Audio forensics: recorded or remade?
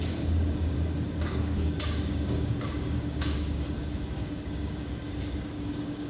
remade